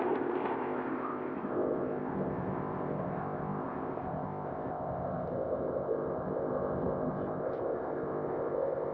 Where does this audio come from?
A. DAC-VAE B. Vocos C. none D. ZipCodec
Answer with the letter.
D